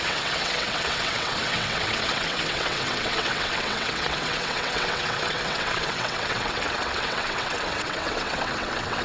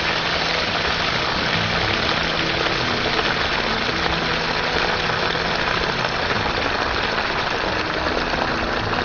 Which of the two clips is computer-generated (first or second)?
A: first